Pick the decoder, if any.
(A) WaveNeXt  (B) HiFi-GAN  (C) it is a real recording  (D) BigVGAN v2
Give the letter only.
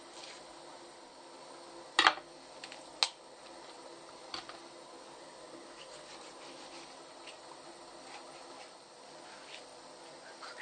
C